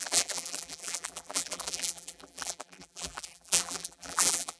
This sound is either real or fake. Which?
fake